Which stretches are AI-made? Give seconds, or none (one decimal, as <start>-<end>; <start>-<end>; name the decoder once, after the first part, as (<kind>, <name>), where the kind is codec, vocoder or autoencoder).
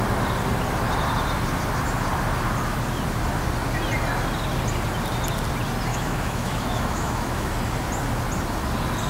5.9-7.5 (autoencoder, DAC-VAE)